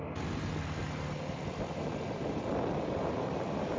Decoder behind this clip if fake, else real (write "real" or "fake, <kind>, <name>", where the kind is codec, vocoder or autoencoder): real